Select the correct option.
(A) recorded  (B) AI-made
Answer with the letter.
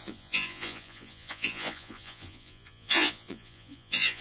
B